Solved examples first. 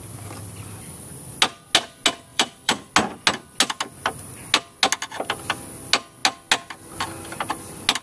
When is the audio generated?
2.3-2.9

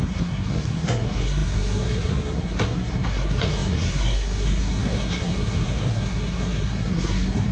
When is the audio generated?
0.0-7.5

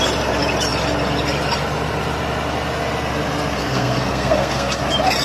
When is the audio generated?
3.6-4.8

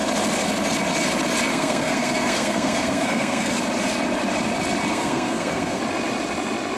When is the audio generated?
1.5-3.6; 4.9-5.8

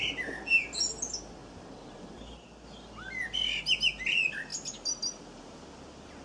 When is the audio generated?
none

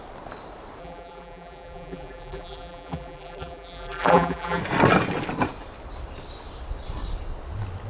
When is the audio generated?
0.8-4.6

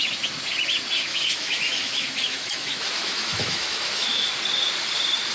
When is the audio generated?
1.1-4.3

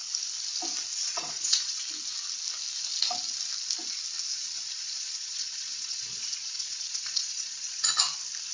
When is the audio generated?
0.9-1.8; 4.3-7.9